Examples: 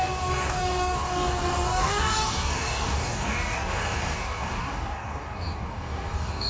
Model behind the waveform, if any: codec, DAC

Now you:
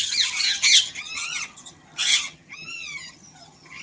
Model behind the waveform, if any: vocoder, HiFi-GAN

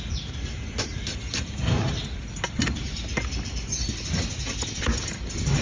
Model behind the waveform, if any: none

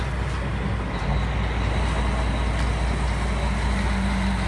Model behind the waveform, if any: none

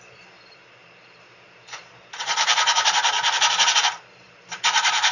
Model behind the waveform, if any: vocoder, BigVGAN v2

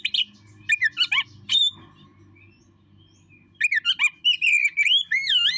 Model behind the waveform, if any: none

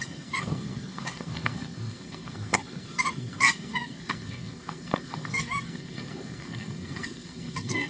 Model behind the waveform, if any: codec, SNAC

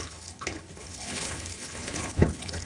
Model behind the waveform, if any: codec, HILCodec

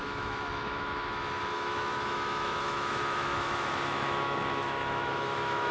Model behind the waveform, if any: autoencoder, DAC-VAE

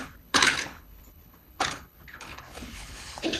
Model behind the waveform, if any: codec, HILCodec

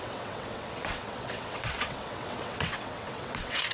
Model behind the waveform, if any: vocoder, WaveNeXt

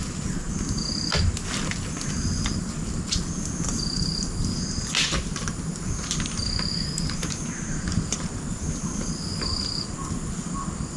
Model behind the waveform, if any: none